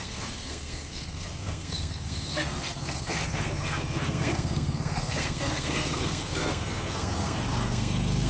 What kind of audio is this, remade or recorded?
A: remade